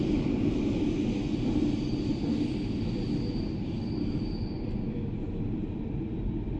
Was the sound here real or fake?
real